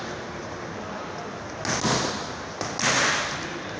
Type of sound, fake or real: real